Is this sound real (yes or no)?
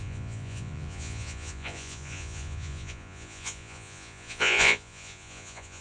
no